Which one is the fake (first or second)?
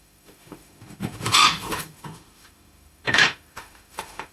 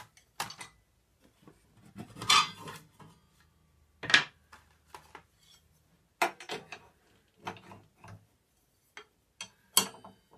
first